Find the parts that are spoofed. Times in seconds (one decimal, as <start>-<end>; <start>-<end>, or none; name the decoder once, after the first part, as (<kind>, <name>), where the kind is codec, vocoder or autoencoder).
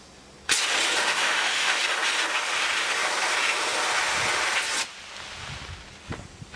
1.0-1.8 (autoencoder, DAC-VAE)